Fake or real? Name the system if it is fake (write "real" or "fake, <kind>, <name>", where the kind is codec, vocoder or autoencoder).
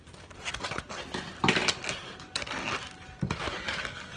real